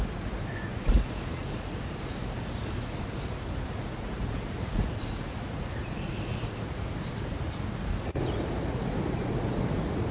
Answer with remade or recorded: remade